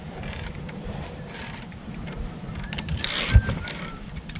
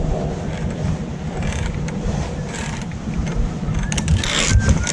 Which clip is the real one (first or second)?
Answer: second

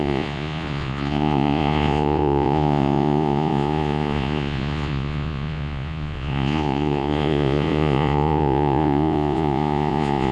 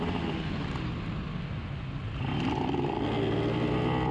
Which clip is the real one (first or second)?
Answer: second